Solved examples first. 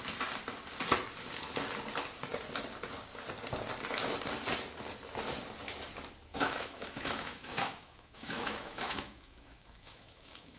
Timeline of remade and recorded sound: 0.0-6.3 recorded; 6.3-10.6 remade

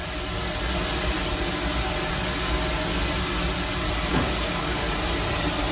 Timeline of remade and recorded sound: 0.0-4.1 recorded; 4.1-4.8 remade; 4.8-5.7 recorded

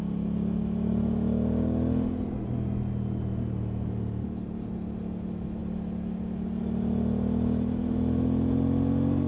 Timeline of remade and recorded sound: 0.0-9.3 recorded